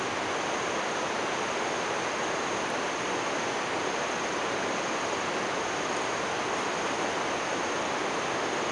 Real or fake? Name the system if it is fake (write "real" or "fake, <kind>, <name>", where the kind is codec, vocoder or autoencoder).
real